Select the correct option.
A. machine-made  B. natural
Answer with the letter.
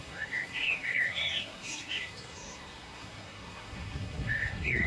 A